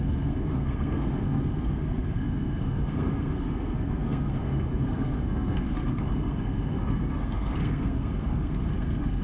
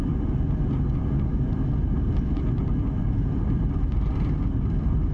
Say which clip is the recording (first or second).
second